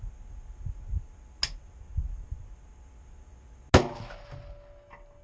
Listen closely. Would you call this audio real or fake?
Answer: real